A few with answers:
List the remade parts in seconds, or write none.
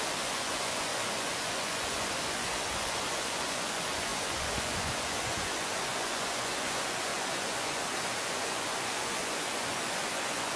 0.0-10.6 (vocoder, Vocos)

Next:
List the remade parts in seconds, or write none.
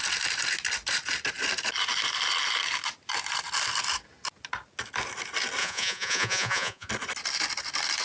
5.6-6.9 (vocoder, Vocos)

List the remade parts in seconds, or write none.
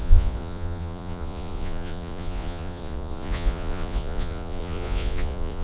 0.0-5.6 (vocoder, Vocos)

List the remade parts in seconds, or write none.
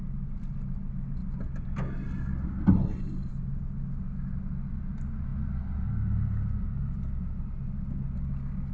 none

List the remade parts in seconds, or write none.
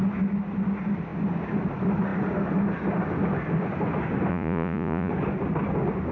4.3-5.1 (vocoder, Vocos)